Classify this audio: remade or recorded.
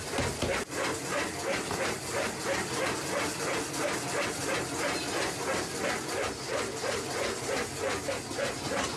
recorded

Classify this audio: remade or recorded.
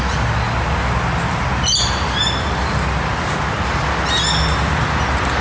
recorded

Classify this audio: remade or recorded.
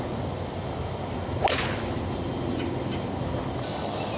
recorded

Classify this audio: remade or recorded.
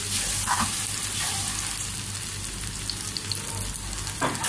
recorded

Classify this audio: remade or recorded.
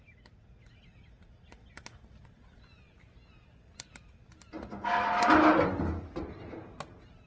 recorded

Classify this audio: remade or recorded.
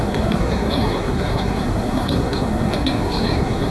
remade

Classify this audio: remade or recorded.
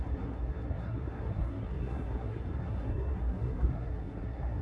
remade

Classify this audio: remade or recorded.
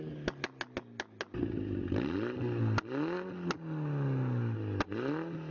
recorded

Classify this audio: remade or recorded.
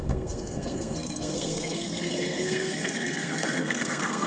remade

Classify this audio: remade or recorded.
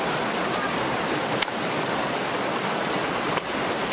recorded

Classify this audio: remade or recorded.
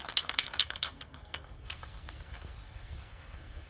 remade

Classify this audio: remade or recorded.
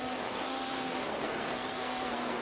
remade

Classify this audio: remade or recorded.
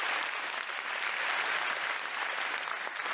recorded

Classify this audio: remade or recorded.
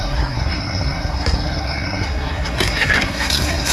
remade